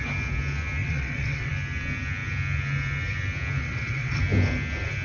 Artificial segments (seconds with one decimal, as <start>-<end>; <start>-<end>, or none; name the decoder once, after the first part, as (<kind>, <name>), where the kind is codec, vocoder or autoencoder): 0.8-1.5 (vocoder, WaveNeXt); 3.6-4.2